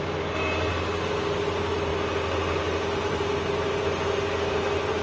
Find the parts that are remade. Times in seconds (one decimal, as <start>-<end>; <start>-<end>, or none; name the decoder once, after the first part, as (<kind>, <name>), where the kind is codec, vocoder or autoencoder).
none